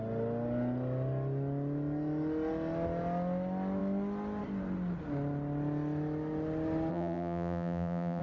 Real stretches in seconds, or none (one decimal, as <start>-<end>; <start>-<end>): 0.0-6.9